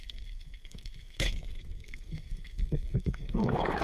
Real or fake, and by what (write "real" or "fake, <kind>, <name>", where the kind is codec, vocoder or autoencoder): fake, codec, SNAC